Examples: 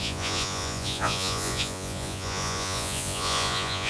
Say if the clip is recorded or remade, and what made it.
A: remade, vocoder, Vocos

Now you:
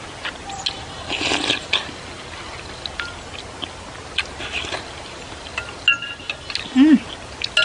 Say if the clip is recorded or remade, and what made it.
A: recorded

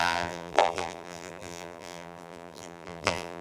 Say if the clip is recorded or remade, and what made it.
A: remade, vocoder, BigVGAN v2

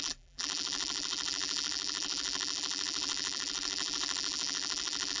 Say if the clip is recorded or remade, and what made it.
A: remade, vocoder, BigVGAN v2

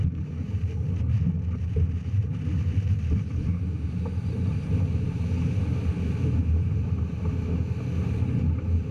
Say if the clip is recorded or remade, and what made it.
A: recorded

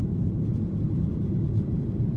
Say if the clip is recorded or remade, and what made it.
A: recorded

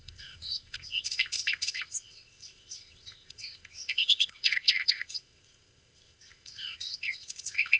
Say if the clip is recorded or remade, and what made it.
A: remade, codec, ZipCodec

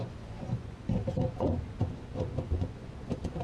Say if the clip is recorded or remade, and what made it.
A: remade, vocoder, Vocos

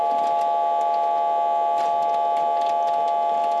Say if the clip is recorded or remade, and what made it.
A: recorded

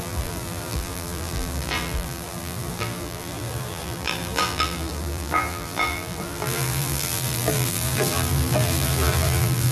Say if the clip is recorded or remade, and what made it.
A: remade, vocoder, BigVGAN v2